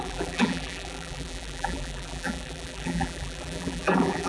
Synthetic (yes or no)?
yes